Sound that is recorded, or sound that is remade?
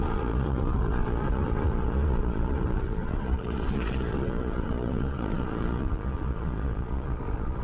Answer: remade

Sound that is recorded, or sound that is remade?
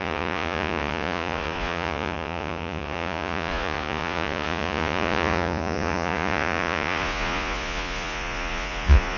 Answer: remade